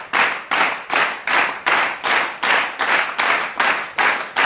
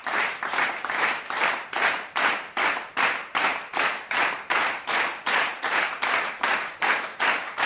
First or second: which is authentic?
first